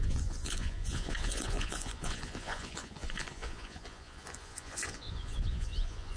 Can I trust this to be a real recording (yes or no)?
no